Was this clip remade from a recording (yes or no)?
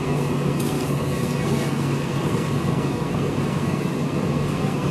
yes